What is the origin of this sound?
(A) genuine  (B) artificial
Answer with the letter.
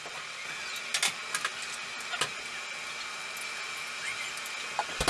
A